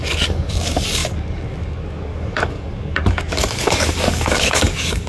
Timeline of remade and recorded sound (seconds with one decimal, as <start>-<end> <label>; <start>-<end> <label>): 0.0-5.1 remade